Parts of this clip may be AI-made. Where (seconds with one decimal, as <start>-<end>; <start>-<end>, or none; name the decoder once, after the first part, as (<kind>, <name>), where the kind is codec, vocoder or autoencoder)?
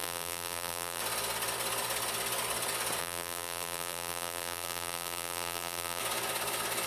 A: 0.0-1.0 (vocoder, BigVGAN v2); 3.0-6.0